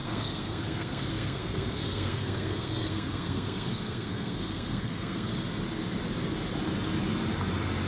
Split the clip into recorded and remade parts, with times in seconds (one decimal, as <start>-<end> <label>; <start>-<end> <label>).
0.0-5.3 remade; 5.3-7.9 recorded